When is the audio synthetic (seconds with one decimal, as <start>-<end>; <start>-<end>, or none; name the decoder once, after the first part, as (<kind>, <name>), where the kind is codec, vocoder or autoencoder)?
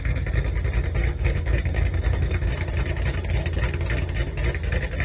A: 1.0-2.5 (codec, DAC)